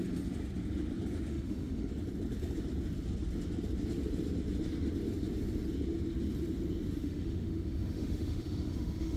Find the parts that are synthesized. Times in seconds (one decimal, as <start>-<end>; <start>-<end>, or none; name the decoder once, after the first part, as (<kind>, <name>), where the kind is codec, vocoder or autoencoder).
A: 1.3-1.9 (autoencoder, DAC-VAE); 7.0-9.2